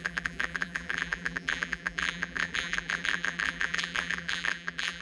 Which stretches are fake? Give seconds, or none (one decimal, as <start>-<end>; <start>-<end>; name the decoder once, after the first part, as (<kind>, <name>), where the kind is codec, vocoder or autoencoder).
0.0-5.0 (vocoder, BigVGAN v2)